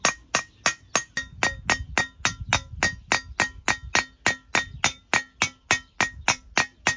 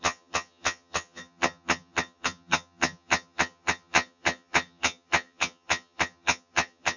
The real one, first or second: first